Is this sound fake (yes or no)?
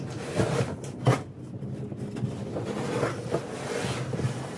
no